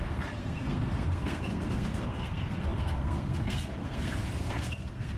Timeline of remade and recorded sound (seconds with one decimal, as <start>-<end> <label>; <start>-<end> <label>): 0.0-5.2 remade